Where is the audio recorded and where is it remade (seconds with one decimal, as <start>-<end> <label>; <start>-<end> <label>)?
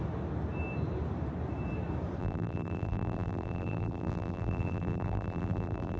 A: 0.0-2.2 recorded; 2.2-6.0 remade